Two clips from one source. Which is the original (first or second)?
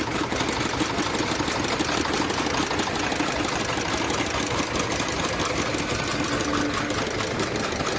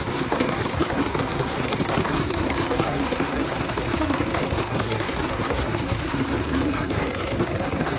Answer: first